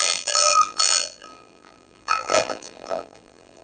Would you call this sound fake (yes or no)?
yes